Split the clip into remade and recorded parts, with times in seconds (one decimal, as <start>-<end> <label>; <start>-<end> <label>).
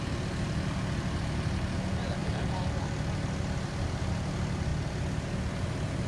0.0-6.1 recorded